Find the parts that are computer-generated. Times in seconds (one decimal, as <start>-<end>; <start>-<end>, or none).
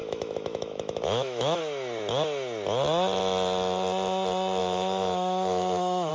0.0-1.6; 4.6-6.1